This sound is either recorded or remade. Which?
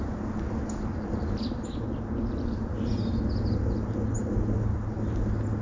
recorded